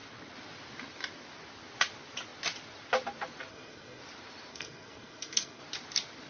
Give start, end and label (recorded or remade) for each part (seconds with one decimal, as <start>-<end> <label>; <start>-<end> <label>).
0.0-3.5 recorded; 3.5-4.0 remade; 4.0-4.5 recorded; 4.5-5.6 remade; 5.6-6.3 recorded